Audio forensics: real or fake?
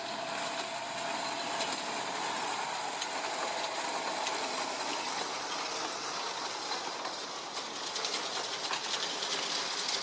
fake